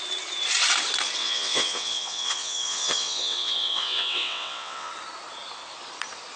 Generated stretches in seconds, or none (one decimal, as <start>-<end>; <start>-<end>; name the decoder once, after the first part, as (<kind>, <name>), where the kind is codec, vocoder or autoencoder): 1.2-4.9 (vocoder, WaveNeXt)

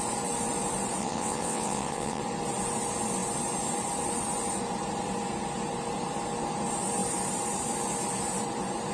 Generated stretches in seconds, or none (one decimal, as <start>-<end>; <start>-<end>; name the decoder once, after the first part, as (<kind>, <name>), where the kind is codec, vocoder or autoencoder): 1.0-2.2 (vocoder, WaveNeXt)